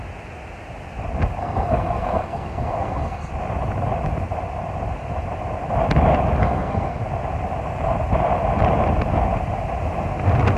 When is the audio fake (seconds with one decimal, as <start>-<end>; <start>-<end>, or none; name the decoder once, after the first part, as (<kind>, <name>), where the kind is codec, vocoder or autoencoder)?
1.4-3.3 (codec, SNAC); 6.4-7.0